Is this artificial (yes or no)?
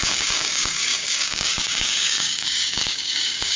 yes